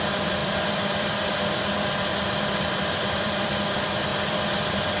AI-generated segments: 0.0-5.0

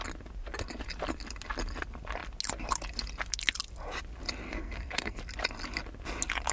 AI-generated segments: 4.4-5.2

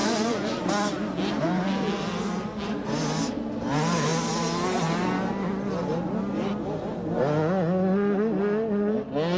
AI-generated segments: 0.0-0.7

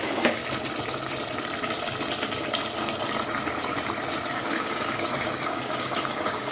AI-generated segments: 0.0-0.4; 4.3-6.5